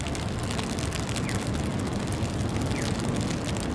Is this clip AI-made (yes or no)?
no